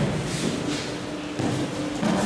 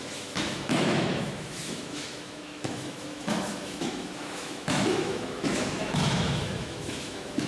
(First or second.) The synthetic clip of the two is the second